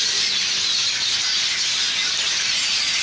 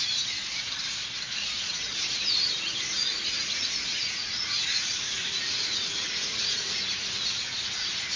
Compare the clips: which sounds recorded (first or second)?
first